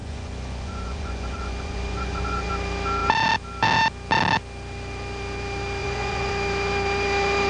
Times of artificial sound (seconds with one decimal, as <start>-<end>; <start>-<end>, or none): 0.0-2.5; 5.8-6.3